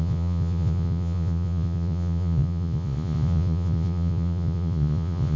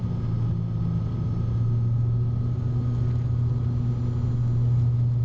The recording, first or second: second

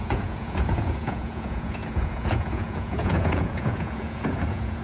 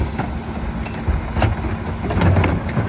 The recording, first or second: second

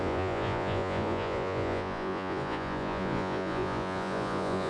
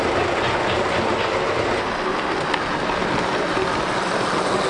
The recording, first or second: second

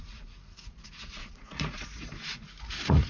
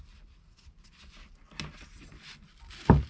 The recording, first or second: second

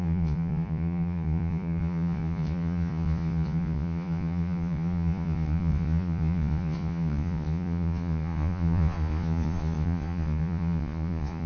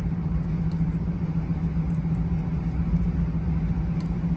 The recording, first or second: second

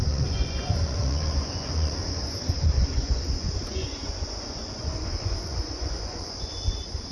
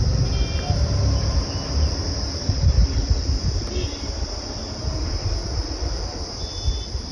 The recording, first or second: second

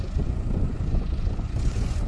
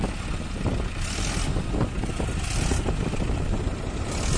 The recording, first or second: second